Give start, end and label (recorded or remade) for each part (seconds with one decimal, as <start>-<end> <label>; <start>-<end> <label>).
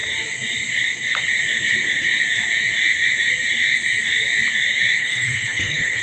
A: 0.0-5.0 recorded; 5.0-6.0 remade